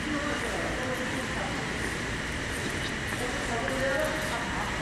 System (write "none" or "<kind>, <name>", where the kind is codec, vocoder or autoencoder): none